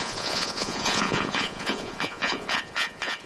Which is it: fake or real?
fake